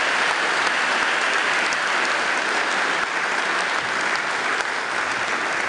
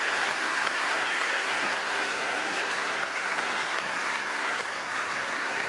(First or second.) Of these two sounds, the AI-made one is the second